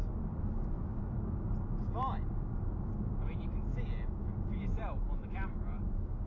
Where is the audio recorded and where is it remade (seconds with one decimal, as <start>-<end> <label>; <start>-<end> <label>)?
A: 0.0-6.3 recorded